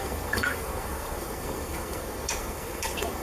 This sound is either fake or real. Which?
fake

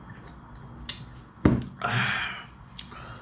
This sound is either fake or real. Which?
real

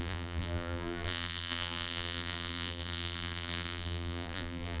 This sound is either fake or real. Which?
fake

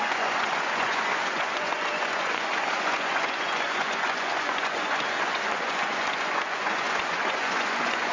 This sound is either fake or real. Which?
fake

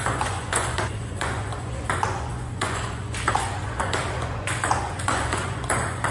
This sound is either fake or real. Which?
fake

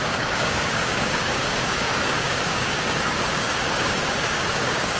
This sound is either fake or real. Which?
fake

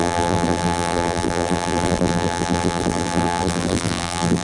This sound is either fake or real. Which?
fake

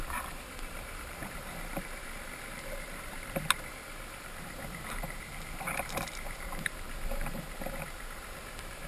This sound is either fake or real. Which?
fake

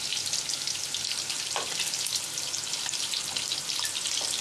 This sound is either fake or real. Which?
real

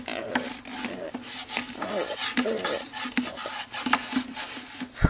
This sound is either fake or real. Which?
real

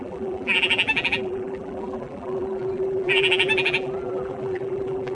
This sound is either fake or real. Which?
fake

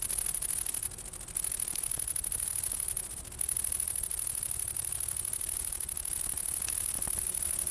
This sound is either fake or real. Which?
real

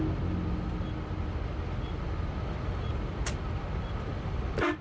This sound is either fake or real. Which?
real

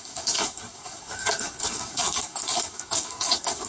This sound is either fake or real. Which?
fake